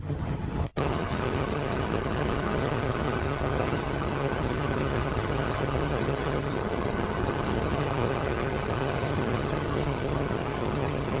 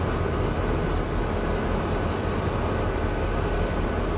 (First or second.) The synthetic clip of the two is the first